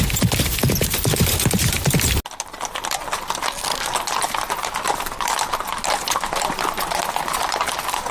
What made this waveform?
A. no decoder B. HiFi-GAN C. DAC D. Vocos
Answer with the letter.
A